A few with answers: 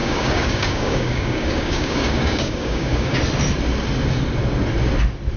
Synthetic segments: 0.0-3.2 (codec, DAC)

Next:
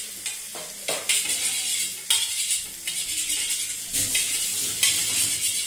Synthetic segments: none

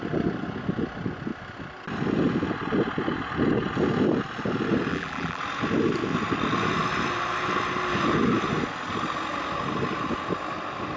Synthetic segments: 4.9-5.4 (vocoder, BigVGAN v2)